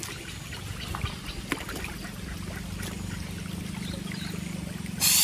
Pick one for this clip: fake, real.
real